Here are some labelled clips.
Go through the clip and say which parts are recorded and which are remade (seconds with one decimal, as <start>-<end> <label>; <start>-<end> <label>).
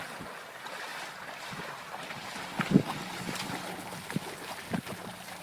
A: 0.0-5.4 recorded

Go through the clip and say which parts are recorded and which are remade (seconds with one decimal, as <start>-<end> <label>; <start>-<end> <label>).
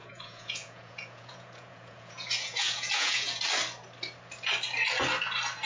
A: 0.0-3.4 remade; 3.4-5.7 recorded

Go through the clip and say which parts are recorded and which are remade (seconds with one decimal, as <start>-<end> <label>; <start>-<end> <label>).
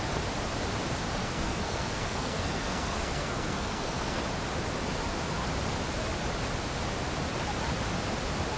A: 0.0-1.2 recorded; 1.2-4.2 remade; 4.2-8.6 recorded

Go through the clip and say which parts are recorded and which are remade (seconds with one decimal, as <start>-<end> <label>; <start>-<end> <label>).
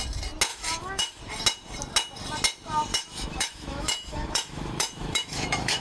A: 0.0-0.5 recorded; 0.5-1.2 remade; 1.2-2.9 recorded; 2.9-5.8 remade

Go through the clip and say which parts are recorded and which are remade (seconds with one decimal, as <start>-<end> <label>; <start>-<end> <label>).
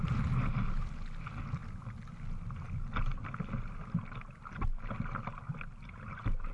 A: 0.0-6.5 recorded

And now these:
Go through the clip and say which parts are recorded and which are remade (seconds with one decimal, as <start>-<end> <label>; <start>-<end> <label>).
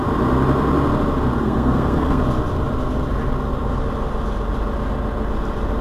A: 0.0-1.4 recorded; 1.4-2.2 remade; 2.2-5.8 recorded